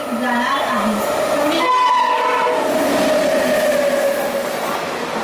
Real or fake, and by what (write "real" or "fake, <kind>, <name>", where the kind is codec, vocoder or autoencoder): real